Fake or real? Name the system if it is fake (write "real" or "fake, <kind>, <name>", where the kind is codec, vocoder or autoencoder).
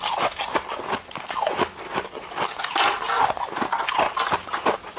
real